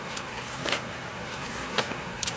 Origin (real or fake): fake